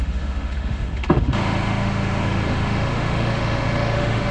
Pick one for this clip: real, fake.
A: fake